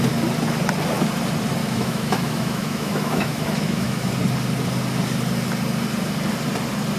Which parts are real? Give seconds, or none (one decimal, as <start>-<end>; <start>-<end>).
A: 0.0-1.6; 4.1-7.0